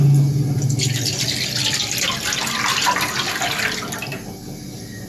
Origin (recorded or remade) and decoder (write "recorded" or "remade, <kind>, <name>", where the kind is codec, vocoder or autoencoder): recorded